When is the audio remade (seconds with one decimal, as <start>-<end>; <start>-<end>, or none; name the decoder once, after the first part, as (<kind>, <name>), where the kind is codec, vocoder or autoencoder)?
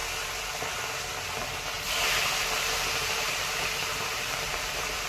2.4-5.1 (vocoder, BigVGAN v2)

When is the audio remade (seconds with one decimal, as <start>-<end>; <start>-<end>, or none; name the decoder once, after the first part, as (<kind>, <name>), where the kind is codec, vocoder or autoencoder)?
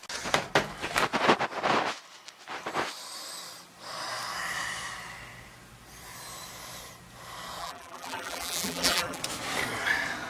7.6-9.2 (vocoder, BigVGAN v2)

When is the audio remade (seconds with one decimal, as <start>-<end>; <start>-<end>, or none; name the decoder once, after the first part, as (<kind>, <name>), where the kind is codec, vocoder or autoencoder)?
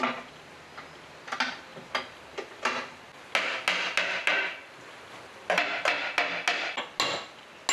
1.7-3.0 (vocoder, BigVGAN v2)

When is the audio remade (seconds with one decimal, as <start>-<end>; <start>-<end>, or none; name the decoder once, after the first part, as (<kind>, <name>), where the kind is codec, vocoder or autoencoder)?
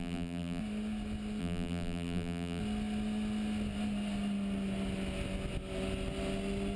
0.0-0.6 (vocoder, BigVGAN v2); 1.4-2.6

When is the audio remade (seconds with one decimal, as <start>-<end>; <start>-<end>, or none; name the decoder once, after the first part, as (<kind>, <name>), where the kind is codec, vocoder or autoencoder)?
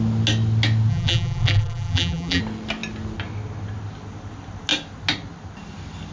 0.9-2.4 (vocoder, BigVGAN v2)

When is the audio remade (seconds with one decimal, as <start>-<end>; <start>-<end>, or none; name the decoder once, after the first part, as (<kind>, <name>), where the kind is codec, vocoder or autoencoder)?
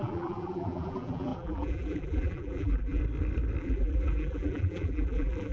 0.0-3.0 (vocoder, BigVGAN v2); 3.6-5.5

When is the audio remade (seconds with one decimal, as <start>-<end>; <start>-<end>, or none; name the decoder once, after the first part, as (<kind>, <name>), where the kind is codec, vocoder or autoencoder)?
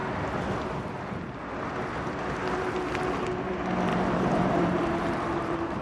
3.9-5.8 (vocoder, BigVGAN v2)